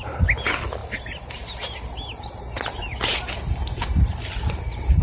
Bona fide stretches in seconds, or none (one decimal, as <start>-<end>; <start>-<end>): 0.0-5.0